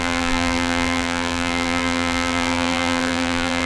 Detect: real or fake fake